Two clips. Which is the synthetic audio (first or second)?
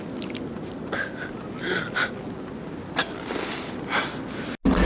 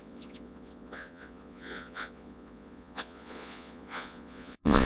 second